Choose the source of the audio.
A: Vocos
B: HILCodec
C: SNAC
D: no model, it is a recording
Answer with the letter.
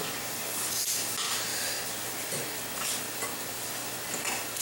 D